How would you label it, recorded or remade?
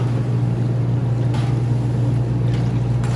recorded